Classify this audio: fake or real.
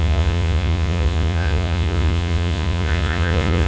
fake